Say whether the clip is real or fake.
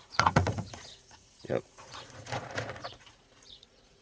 fake